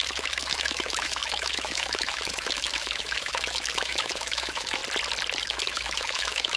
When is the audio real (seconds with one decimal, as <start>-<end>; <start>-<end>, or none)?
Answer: 4.8-5.4

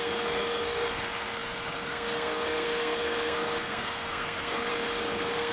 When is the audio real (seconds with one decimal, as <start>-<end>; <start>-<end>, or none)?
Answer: none

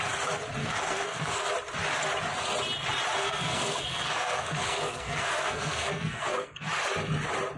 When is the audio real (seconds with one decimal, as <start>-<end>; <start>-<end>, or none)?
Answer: 0.0-0.6; 1.5-3.2; 6.7-7.6

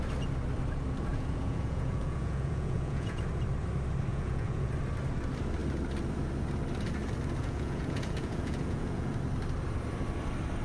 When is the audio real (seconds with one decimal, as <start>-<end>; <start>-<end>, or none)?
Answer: 0.0-1.1; 3.2-4.1; 4.7-7.4; 9.1-10.6